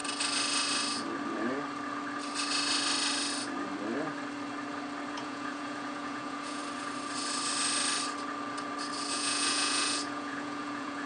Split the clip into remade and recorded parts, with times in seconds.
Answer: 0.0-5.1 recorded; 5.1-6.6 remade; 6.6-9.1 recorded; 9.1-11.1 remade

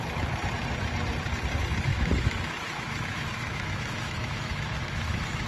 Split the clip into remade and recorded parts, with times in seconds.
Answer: 0.0-1.9 recorded; 1.9-5.5 remade

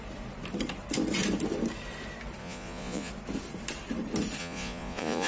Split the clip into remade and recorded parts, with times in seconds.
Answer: 0.0-2.4 recorded; 2.4-3.1 remade; 3.1-4.4 recorded; 4.4-5.3 remade

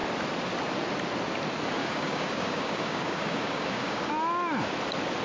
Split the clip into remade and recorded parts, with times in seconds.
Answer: 0.0-1.8 recorded; 1.8-4.1 remade; 4.1-5.2 recorded

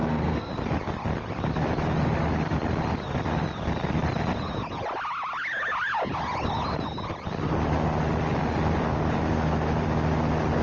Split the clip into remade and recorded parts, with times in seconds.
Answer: 0.0-0.5 remade; 0.5-10.6 recorded

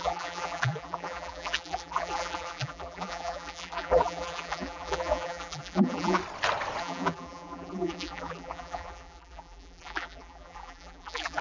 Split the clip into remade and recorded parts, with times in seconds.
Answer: 0.0-6.2 remade; 6.2-6.8 recorded; 6.8-11.4 remade

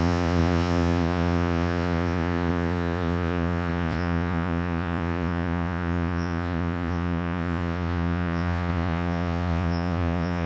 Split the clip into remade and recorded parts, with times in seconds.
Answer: 0.0-10.5 remade